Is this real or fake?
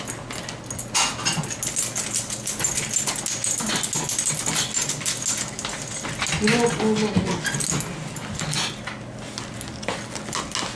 real